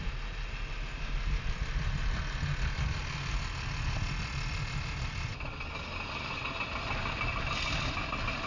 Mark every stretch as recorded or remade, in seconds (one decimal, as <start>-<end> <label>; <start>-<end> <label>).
0.0-8.5 recorded